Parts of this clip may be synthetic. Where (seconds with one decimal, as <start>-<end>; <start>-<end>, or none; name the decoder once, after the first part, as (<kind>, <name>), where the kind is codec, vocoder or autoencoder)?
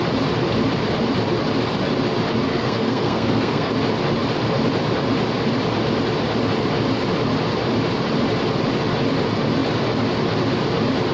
2.5-3.7 (codec, SNAC)